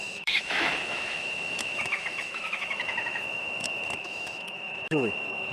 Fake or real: fake